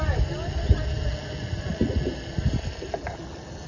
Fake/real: real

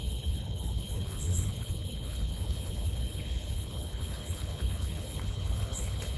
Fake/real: fake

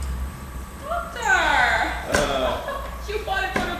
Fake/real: fake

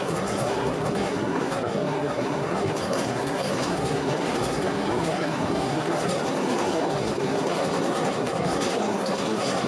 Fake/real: fake